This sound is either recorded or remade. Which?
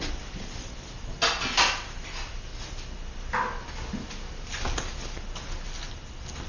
recorded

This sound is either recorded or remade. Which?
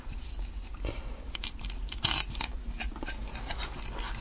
recorded